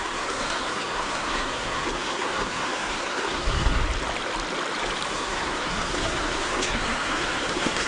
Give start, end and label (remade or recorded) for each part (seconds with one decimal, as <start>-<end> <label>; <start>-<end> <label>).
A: 0.0-3.8 remade; 3.8-5.1 recorded; 5.1-7.9 remade